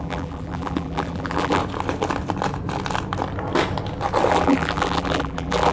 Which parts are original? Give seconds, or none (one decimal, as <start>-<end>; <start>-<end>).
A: 1.6-4.3